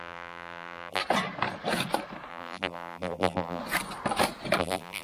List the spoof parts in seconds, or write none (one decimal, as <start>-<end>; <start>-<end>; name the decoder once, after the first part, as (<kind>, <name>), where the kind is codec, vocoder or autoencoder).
0.0-1.0 (vocoder, BigVGAN v2); 2.3-3.6; 4.6-5.0